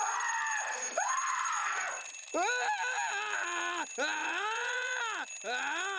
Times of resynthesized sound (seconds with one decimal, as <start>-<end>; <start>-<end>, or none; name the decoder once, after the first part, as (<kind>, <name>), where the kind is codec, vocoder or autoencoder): 1.6-2.3 (vocoder, Vocos); 4.2-4.9